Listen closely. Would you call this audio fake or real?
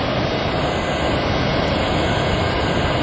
real